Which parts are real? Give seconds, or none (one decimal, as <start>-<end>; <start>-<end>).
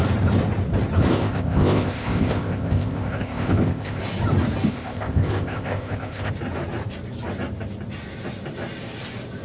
0.0-1.1; 4.0-4.7; 6.3-9.4